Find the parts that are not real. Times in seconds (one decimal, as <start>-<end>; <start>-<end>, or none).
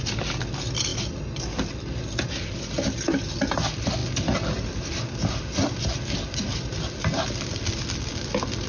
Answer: none